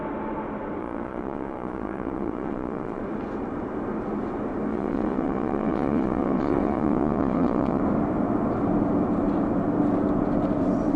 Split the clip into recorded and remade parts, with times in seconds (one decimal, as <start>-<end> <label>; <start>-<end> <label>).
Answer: 0.0-0.8 recorded; 0.8-3.0 remade; 3.0-4.7 recorded; 4.7-7.8 remade; 7.8-11.0 recorded